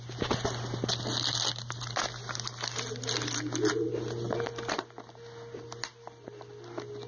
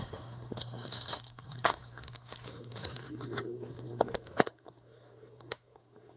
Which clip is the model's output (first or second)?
second